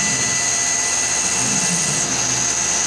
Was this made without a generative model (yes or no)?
yes